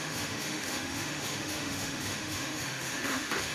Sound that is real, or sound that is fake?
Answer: fake